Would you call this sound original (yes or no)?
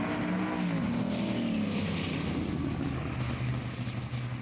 yes